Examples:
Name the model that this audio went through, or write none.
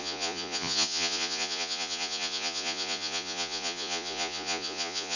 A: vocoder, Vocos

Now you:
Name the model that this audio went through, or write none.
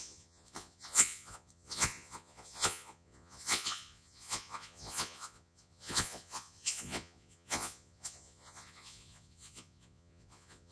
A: vocoder, Vocos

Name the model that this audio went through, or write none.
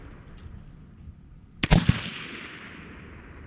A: none